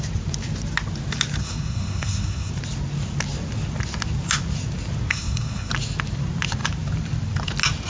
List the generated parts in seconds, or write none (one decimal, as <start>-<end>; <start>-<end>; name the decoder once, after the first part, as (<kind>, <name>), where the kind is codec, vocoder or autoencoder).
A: 1.4-2.5 (codec, SNAC); 5.1-5.7